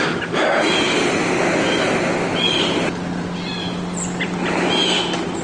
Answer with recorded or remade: recorded